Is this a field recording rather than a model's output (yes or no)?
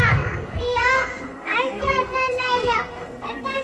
no